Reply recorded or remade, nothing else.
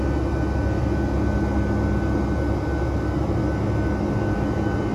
recorded